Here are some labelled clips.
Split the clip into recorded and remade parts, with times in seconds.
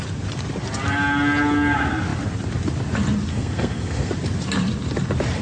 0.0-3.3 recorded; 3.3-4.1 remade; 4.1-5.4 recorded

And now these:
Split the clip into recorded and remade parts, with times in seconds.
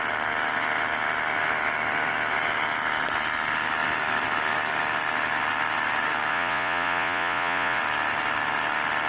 0.0-6.3 recorded; 6.3-7.8 remade; 7.8-9.1 recorded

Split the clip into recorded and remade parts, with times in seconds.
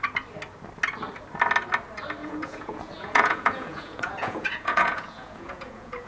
0.0-2.2 recorded; 2.2-6.1 remade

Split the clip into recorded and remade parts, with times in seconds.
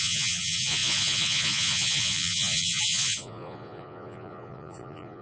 0.0-5.2 remade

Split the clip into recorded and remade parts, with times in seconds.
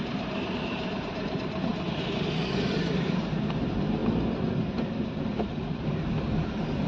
0.0-4.0 remade; 4.0-5.2 recorded; 5.2-6.9 remade